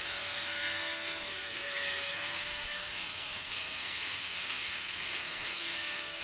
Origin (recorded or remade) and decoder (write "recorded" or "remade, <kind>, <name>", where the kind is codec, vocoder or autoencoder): remade, codec, SNAC